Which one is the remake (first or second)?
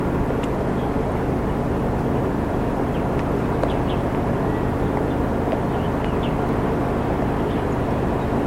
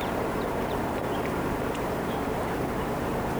second